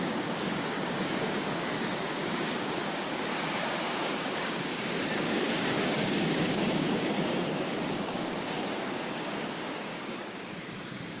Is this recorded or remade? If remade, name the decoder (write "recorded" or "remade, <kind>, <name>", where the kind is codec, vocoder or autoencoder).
remade, codec, DAC